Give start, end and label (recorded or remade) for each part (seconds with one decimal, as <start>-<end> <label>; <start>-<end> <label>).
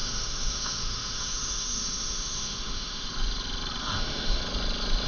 0.0-3.1 remade; 3.1-3.8 recorded; 3.8-4.4 remade; 4.4-5.1 recorded